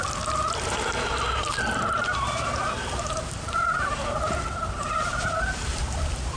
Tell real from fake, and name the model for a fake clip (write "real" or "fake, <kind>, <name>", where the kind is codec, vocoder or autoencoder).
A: real